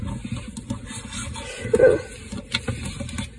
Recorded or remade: recorded